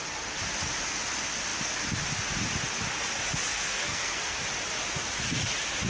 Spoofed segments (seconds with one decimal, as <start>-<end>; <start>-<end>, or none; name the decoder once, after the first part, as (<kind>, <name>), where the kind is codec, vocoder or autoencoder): 3.5-4.4 (codec, SNAC)